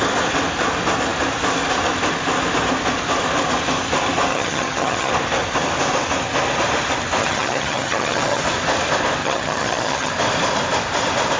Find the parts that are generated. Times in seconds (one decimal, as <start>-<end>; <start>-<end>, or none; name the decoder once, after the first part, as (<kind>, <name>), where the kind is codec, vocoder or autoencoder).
4.3-5.1 (vocoder, HiFi-GAN); 7.2-8.4; 9.2-10.1